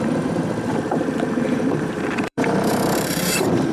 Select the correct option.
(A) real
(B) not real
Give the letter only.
B